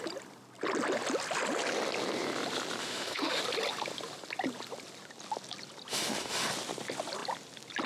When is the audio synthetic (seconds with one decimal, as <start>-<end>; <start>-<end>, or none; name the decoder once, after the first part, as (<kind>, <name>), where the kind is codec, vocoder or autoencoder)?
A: 2.8-3.4 (autoencoder, DAC-VAE); 5.9-6.5